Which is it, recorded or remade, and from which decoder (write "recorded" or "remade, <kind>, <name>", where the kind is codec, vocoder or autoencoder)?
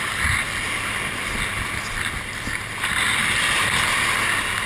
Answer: recorded